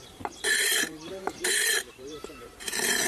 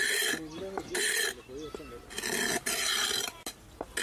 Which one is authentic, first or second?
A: second